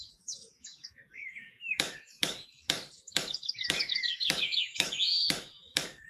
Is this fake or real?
fake